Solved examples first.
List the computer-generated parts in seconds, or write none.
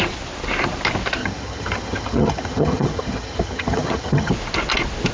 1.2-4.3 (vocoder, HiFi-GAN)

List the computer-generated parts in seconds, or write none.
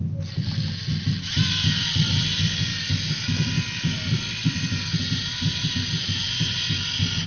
none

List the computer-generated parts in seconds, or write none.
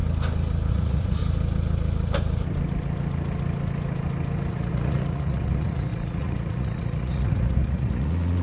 0.7-1.2 (vocoder, Vocos); 4.5-8.4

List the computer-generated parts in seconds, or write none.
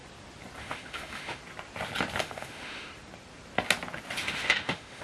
0.6-1.4 (autoencoder, DAC-VAE); 2.2-2.9; 4.2-5.0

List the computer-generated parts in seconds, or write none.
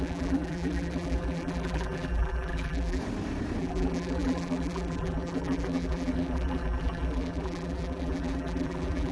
0.0-3.0 (vocoder, BigVGAN v2); 3.6-9.1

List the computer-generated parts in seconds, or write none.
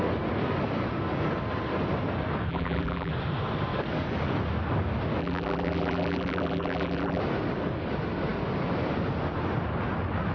2.5-3.1 (vocoder, BigVGAN v2); 5.2-7.2